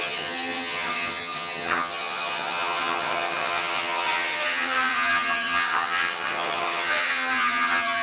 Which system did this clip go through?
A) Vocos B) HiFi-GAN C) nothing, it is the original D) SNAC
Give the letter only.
B